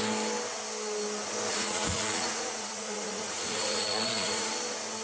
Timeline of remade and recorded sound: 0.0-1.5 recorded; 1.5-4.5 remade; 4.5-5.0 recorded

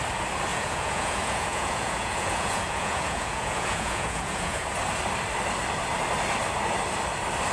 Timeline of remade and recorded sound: 0.0-0.5 recorded; 0.5-4.7 remade; 4.7-7.5 recorded